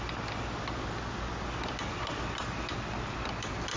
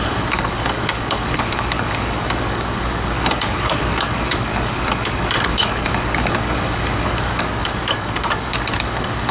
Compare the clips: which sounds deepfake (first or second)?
second